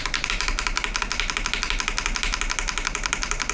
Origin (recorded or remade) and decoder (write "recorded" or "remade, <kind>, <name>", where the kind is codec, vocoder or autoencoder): recorded